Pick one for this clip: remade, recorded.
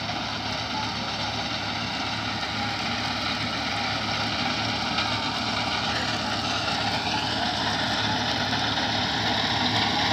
recorded